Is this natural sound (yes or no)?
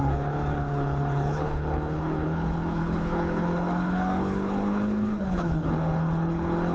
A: no